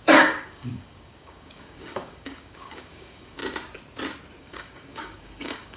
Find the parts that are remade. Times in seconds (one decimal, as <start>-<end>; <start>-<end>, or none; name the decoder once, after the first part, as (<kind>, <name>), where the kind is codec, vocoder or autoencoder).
0.0-3.4 (codec, DAC); 4.4-5.8

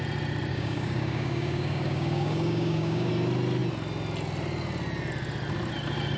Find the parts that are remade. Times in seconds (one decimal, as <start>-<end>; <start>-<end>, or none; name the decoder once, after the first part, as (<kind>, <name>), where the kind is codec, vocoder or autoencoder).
0.5-3.1 (codec, DAC)

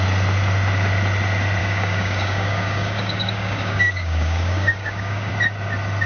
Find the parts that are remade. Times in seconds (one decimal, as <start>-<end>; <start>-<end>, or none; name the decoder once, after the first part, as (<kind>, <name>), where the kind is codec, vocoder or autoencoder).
1.6-5.3 (codec, DAC)

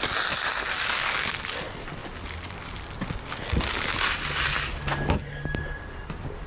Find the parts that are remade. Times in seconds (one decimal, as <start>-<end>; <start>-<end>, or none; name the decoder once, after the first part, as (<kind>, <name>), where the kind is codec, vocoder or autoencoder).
none

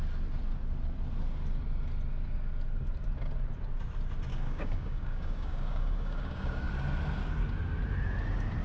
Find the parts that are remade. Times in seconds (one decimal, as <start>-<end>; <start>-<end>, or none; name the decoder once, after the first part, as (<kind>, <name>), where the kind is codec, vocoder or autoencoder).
4.3-6.7 (codec, DAC)

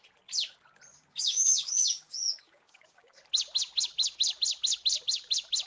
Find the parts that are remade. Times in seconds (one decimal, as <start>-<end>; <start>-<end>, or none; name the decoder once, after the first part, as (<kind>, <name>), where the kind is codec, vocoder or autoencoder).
0.9-3.2 (codec, DAC)

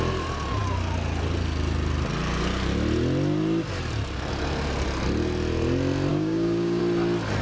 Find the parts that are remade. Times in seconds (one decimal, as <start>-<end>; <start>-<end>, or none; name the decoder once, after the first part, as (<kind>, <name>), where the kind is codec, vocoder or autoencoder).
6.1-6.8 (codec, DAC)